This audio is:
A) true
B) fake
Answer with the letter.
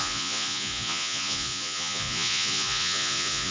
B